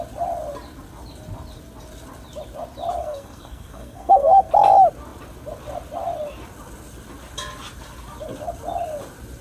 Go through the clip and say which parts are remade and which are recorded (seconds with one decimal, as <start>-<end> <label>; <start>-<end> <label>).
0.0-3.0 recorded; 3.0-4.5 remade; 4.5-9.4 recorded